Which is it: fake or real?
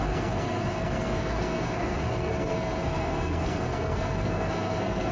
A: fake